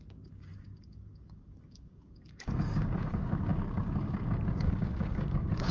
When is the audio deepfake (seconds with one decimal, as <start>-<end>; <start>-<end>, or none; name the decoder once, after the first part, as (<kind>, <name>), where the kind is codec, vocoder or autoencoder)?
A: 0.0-5.7 (codec, DAC)